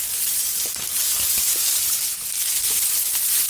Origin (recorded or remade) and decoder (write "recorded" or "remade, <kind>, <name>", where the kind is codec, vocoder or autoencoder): remade, vocoder, BigVGAN v2